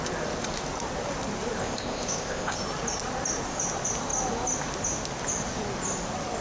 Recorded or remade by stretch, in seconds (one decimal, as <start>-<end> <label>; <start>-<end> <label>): 0.0-1.6 recorded; 1.6-2.6 remade; 2.6-6.4 recorded